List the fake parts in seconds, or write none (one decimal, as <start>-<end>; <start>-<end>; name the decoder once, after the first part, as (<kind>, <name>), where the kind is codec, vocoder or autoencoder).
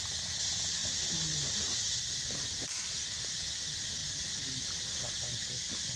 none